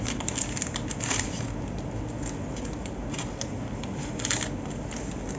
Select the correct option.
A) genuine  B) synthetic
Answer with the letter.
A